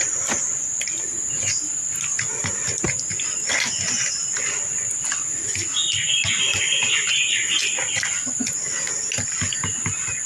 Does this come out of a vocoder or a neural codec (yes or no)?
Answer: no